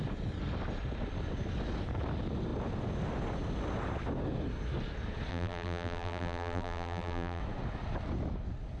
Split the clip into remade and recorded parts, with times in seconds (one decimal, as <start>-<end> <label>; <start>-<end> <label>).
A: 0.0-5.3 recorded; 5.3-7.4 remade; 7.4-8.8 recorded

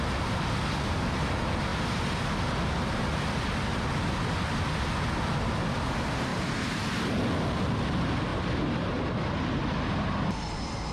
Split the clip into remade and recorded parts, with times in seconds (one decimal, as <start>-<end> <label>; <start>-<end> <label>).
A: 0.0-6.3 recorded; 6.3-7.1 remade; 7.1-8.3 recorded; 8.3-9.0 remade; 9.0-10.9 recorded

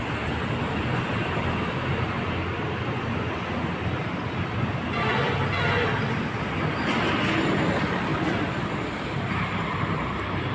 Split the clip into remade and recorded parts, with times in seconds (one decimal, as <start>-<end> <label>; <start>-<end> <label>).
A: 0.0-8.1 recorded; 8.1-10.5 remade

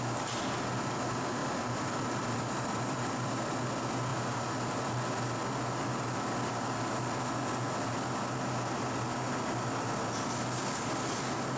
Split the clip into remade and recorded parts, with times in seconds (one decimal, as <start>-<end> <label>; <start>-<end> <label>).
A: 0.0-1.4 recorded; 1.4-3.6 remade; 3.6-4.1 recorded; 4.1-4.8 remade; 4.8-11.6 recorded

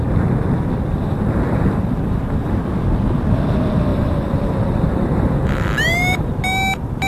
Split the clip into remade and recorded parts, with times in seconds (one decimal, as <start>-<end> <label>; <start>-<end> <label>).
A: 0.0-0.9 recorded; 0.9-2.6 remade; 2.6-3.9 recorded; 3.9-6.3 remade; 6.3-7.1 recorded

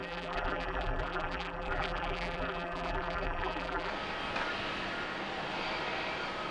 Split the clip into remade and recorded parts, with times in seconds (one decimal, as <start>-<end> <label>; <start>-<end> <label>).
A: 0.0-3.9 remade; 3.9-6.5 recorded